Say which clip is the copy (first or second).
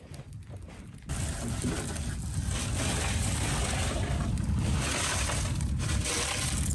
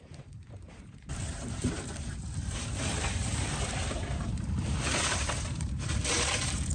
second